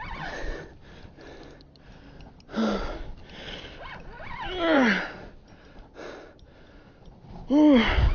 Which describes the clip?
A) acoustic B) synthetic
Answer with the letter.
A